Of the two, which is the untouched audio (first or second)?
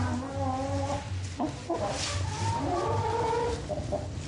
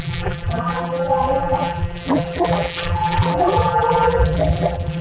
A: first